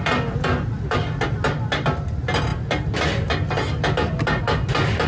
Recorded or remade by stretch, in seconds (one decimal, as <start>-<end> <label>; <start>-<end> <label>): 0.0-5.1 recorded